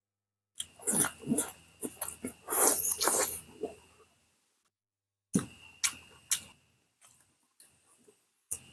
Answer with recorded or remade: recorded